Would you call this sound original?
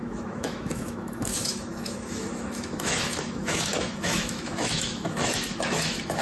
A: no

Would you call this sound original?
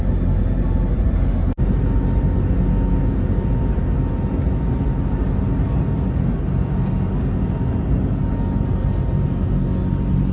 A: yes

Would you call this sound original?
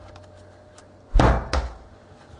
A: yes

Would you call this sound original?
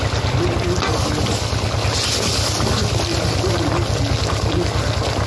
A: yes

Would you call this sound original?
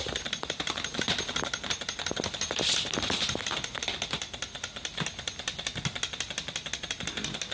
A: yes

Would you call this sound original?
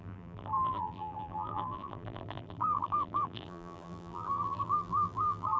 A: no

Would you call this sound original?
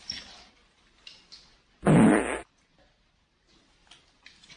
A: yes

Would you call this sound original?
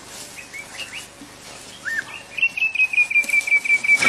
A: yes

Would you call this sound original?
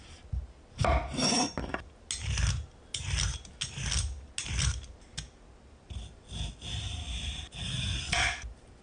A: yes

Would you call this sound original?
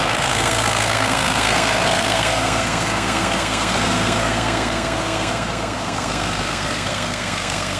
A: no